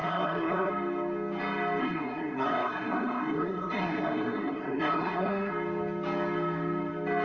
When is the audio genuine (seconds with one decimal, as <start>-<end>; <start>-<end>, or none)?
0.7-1.8; 5.5-7.2